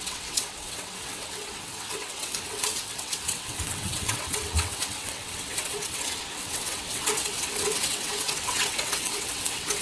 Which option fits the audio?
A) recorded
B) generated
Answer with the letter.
B